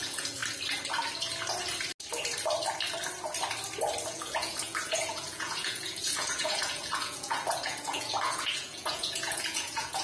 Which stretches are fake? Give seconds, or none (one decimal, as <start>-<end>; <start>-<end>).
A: 0.0-0.4; 4.1-10.0